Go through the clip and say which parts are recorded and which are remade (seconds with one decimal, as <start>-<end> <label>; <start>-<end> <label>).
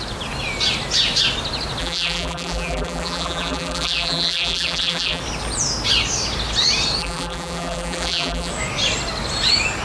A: 0.0-1.8 recorded; 1.8-5.2 remade; 5.2-7.0 recorded; 7.0-8.5 remade; 8.5-9.8 recorded